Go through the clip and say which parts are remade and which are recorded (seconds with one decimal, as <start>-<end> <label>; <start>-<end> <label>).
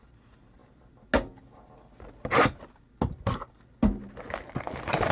0.0-5.1 recorded